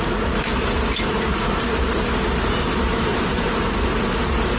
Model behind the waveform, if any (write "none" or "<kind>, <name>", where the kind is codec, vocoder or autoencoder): none